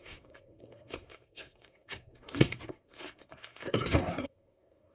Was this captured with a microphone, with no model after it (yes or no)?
no